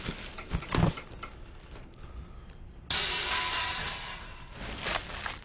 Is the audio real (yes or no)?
yes